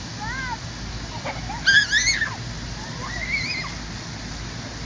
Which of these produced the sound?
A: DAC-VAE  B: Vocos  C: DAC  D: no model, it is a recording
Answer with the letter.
D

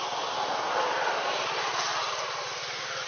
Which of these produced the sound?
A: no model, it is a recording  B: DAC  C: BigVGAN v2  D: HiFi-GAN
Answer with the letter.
A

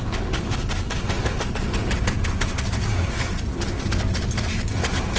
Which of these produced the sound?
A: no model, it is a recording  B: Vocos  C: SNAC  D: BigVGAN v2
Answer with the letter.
A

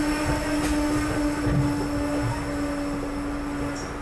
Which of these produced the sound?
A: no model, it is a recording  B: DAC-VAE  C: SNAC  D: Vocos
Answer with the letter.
A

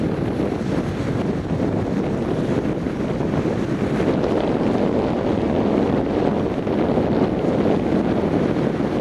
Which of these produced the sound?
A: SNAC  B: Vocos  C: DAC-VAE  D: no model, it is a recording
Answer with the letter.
D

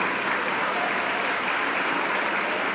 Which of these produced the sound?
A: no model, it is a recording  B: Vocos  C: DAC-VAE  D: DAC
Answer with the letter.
A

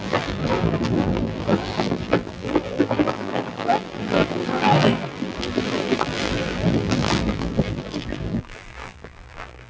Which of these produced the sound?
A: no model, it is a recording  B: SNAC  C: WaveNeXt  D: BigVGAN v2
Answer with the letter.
D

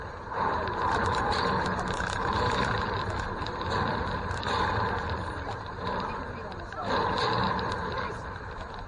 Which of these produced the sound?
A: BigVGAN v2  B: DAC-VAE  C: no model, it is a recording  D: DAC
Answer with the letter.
A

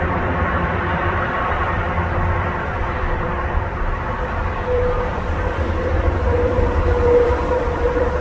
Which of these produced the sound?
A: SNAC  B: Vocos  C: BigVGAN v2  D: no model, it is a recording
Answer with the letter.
C